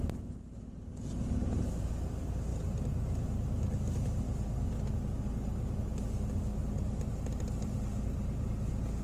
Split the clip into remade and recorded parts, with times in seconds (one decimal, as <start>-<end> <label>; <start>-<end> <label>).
0.0-9.0 recorded